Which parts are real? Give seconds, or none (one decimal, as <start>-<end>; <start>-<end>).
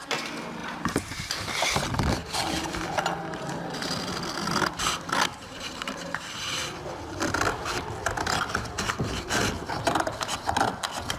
0.0-0.6; 1.6-5.3; 6.2-11.2